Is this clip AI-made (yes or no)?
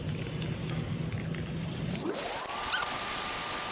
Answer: no